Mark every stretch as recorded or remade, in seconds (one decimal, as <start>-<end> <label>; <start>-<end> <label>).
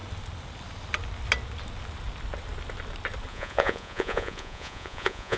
0.0-3.3 recorded; 3.3-5.4 remade